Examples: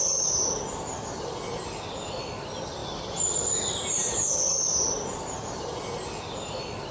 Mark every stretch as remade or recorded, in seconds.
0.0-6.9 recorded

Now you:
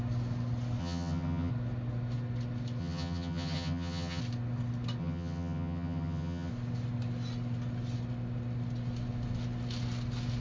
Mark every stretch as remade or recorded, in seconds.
0.0-0.8 recorded; 0.8-1.5 remade; 1.5-2.8 recorded; 2.8-4.2 remade; 4.2-5.0 recorded; 5.0-6.5 remade; 6.5-10.4 recorded